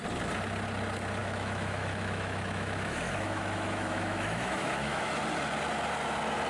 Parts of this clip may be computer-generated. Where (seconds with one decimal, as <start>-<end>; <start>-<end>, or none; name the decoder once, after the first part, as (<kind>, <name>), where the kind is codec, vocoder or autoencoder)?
1.2-5.1 (autoencoder, DAC-VAE)